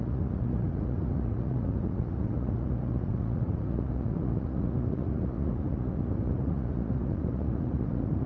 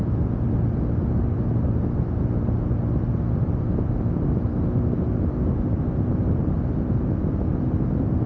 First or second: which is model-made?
first